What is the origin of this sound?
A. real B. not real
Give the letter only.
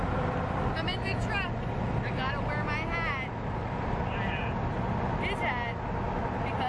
A